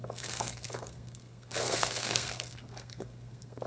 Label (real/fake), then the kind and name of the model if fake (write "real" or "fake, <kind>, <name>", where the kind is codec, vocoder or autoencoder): fake, codec, SNAC